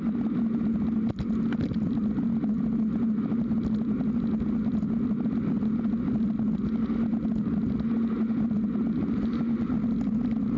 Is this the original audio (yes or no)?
yes